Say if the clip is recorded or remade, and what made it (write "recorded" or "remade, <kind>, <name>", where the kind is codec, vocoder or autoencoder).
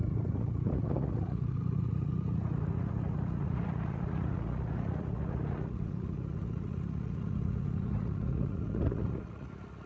remade, vocoder, Vocos